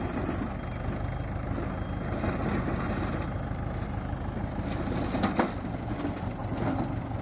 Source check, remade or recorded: recorded